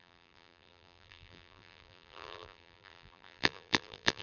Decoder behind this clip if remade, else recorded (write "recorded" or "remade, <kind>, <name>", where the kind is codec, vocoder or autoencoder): remade, vocoder, BigVGAN v2